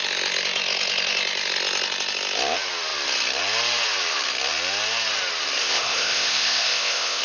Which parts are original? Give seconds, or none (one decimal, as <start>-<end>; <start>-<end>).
0.0-5.6